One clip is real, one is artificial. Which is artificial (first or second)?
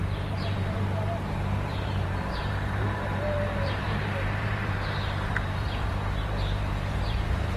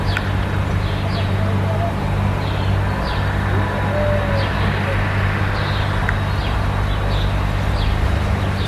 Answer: first